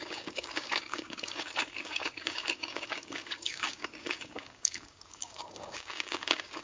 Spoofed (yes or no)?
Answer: yes